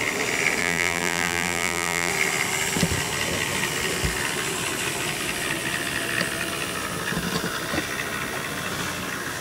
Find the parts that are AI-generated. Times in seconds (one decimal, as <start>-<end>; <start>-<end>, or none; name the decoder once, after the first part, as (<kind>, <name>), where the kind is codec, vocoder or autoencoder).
0.6-2.1 (vocoder, BigVGAN v2)